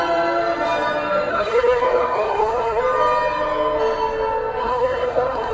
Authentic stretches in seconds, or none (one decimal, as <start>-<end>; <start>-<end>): 0.0-1.3; 2.8-4.6